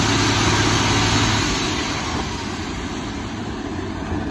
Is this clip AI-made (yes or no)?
no